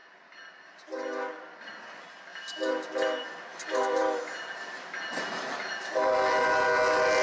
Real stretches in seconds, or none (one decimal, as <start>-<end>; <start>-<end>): 0.0-7.2